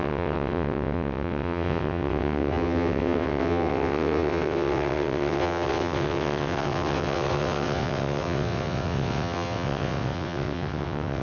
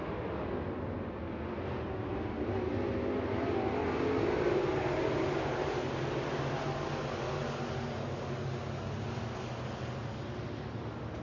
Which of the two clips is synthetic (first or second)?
first